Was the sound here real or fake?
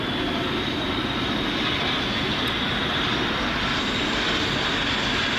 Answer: real